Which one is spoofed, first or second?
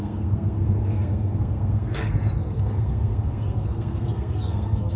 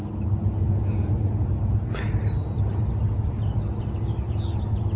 first